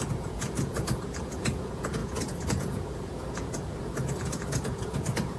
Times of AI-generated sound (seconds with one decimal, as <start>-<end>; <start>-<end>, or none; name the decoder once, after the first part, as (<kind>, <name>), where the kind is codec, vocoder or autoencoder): 0.0-5.4 (vocoder, Vocos)